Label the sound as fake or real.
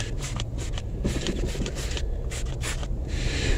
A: fake